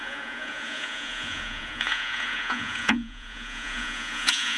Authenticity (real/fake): fake